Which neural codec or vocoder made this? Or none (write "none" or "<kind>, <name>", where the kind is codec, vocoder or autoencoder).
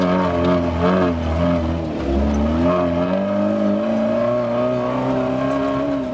none